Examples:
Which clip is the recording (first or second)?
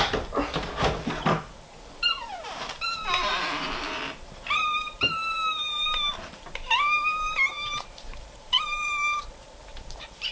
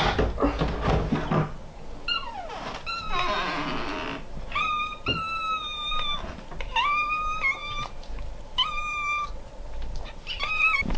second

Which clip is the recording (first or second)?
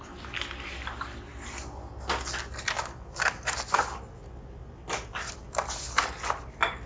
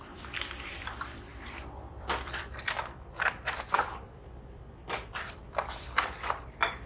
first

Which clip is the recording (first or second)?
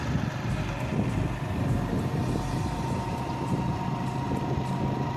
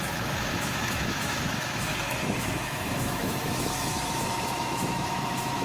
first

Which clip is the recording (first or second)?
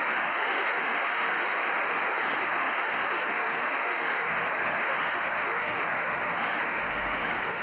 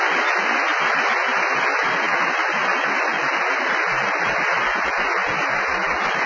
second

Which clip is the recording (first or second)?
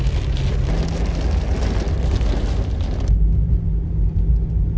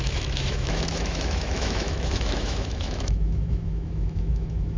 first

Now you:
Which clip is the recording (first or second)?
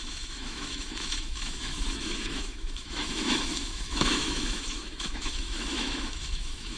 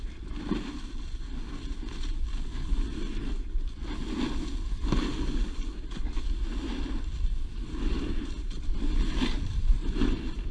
second